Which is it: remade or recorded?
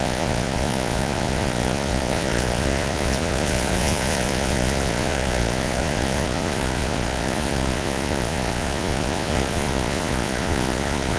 remade